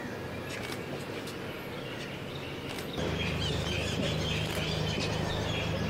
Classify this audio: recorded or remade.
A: recorded